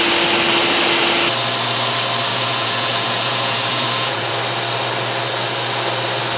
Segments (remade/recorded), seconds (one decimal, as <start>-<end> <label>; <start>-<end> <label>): 0.0-2.3 recorded; 2.3-4.3 remade; 4.3-6.4 recorded